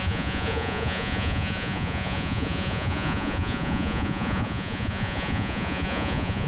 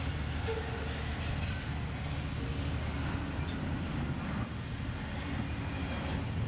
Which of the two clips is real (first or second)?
second